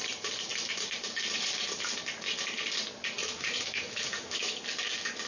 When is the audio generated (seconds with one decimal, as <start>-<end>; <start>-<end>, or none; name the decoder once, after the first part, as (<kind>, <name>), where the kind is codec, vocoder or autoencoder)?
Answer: 3.2-4.6 (autoencoder, DAC-VAE)